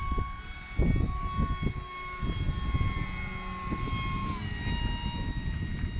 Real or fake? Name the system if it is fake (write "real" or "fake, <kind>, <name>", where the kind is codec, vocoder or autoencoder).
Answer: real